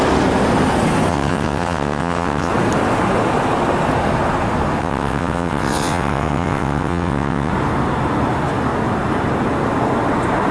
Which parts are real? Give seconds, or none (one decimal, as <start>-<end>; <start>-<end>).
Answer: 0.0-1.1; 2.5-4.8; 7.5-10.5